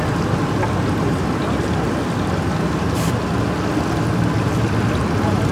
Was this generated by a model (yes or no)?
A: no